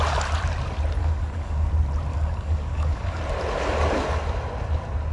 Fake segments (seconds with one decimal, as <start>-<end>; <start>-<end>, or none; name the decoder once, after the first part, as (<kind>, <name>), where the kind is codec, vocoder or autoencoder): 1.0-1.7 (codec, DAC); 2.1-3.2